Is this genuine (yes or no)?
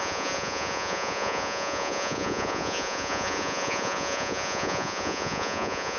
no